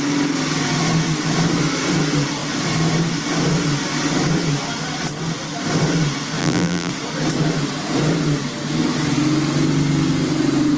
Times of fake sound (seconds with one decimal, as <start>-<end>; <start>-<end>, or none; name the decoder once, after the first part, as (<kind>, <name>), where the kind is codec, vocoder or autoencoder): 6.4-6.9 (vocoder, BigVGAN v2)